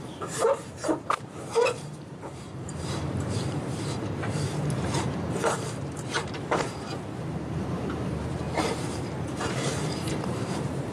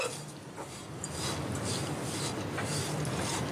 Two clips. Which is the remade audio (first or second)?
first